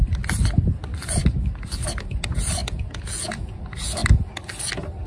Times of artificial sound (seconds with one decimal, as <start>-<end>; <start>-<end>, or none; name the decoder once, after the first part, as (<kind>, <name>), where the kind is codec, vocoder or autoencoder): 2.6-3.6 (vocoder, Vocos)